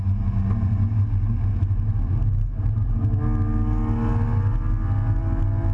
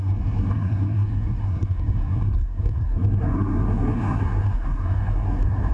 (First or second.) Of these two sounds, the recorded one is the first